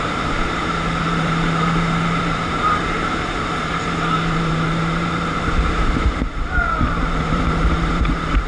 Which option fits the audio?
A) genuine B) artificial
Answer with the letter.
B